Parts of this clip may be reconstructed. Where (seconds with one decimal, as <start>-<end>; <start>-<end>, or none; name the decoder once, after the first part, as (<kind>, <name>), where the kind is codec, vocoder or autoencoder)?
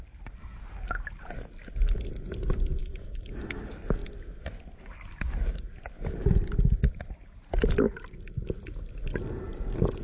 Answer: 2.8-3.6 (autoencoder, DAC-VAE)